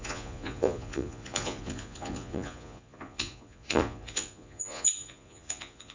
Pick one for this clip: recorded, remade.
remade